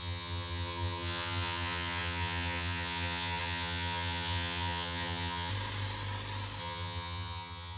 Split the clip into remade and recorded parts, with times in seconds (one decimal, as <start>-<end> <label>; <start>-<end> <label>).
0.0-5.5 remade; 5.5-6.6 recorded; 6.6-7.8 remade